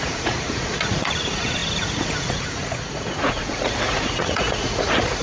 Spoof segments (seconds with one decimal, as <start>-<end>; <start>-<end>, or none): 0.0-5.2